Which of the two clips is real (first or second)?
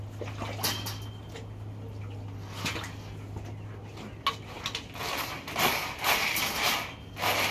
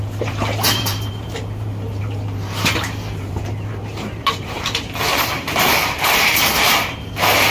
first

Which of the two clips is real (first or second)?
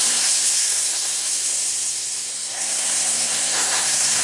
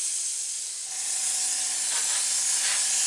second